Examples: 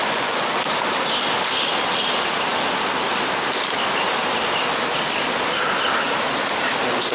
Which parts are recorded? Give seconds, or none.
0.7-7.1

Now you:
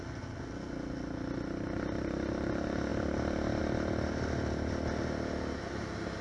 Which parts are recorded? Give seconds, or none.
0.0-6.2

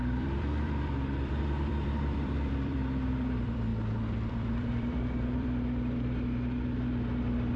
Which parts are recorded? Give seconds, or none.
3.7-4.3